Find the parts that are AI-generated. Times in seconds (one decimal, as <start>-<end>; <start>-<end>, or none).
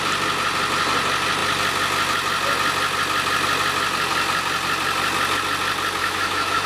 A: 6.0-6.7